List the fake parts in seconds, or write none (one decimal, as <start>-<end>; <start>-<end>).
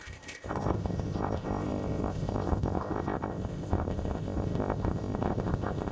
0.0-5.9